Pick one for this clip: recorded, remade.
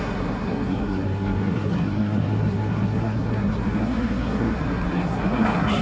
remade